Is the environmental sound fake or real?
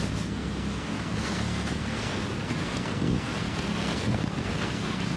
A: fake